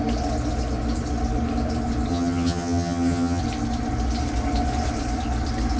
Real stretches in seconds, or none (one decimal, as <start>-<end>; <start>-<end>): 0.0-2.1; 3.4-5.8